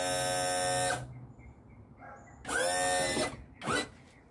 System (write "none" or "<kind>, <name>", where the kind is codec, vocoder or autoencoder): none